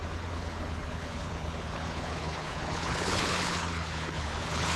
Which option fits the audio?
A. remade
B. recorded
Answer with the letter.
A